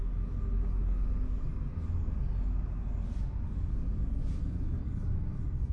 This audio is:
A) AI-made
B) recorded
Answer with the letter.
B